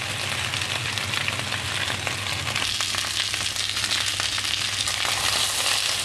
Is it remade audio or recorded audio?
recorded